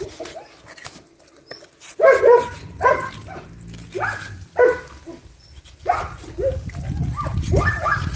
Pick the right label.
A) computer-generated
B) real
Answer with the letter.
B